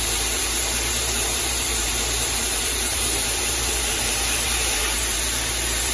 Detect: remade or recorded remade